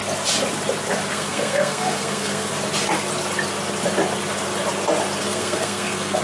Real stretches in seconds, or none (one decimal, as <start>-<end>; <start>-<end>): 0.0-1.1; 2.5-5.2